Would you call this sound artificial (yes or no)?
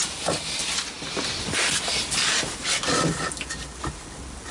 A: no